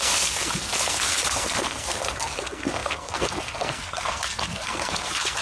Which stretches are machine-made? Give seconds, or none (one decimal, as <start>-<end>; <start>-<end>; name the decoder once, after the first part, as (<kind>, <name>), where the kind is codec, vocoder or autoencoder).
0.0-5.4 (codec, SNAC)